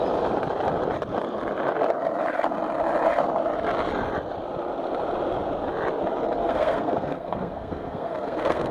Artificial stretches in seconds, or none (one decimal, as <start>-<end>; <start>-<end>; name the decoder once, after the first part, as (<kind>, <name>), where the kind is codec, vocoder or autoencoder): 6.4-8.7 (codec, SNAC)